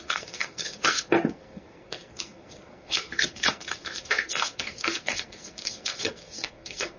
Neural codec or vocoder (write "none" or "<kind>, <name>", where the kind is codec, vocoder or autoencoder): codec, SNAC